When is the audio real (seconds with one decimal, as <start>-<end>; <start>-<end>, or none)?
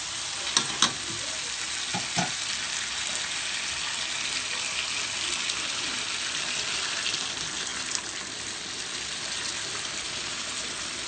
0.0-11.1